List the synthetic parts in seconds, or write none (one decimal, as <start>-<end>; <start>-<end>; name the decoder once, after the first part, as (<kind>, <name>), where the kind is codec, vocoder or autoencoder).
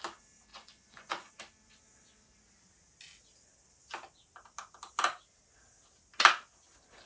0.5-1.3 (vocoder, Vocos)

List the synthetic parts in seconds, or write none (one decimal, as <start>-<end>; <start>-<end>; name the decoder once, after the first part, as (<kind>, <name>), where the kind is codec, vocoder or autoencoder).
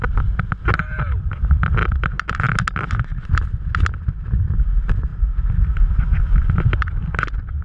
none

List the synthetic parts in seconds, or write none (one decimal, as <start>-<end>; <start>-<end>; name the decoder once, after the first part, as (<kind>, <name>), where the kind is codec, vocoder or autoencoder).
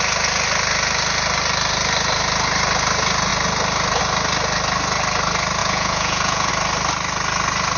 5.6-6.5 (vocoder, Vocos)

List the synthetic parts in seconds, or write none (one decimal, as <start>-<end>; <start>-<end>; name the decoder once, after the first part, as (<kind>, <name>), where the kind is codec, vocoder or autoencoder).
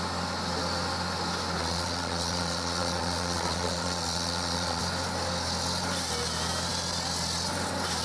1.6-4.8 (vocoder, Vocos)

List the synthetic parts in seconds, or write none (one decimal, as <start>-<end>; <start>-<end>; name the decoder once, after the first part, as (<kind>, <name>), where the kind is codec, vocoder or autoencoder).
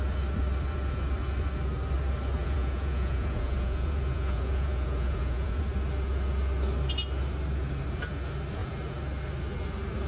2.4-5.6 (vocoder, Vocos)